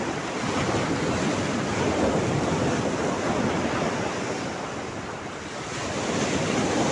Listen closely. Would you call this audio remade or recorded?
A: recorded